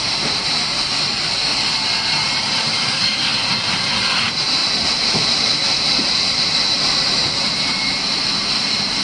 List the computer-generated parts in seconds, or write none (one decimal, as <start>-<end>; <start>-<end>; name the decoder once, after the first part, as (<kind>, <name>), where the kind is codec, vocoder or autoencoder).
0.0-1.5 (vocoder, BigVGAN v2); 2.1-9.0